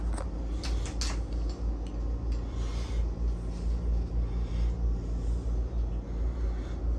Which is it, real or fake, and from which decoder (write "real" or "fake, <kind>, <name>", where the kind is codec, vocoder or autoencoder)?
real